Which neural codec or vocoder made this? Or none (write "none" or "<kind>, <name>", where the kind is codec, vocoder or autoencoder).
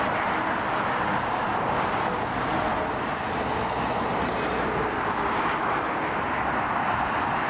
none